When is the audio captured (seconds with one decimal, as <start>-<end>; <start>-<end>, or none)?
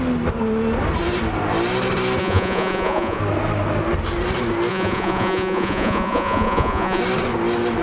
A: 0.0-2.2; 3.2-4.7; 7.0-7.8